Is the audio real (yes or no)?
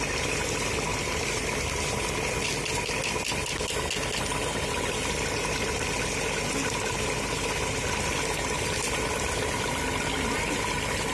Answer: yes